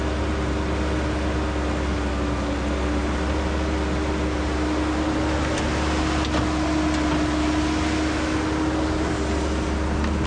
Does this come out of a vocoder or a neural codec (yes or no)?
no